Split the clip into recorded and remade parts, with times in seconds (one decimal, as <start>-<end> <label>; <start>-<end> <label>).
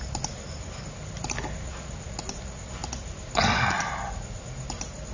0.0-5.1 recorded